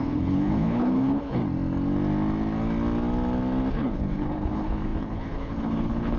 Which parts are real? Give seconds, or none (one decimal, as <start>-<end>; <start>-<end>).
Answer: 1.4-3.7